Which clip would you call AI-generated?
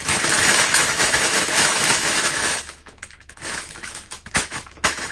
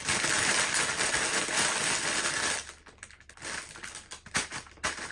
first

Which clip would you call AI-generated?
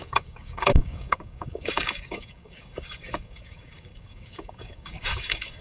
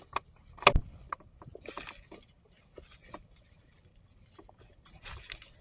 first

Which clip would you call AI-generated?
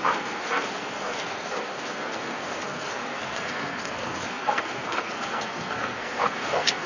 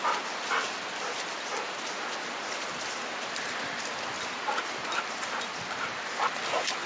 first